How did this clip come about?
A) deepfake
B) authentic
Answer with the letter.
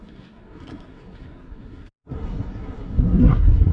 A